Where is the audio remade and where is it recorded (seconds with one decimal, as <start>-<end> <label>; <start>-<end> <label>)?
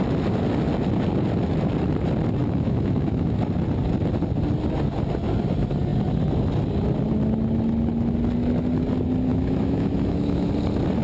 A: 0.0-2.4 recorded; 2.4-3.4 remade; 3.4-9.3 recorded; 9.3-10.5 remade; 10.5-11.0 recorded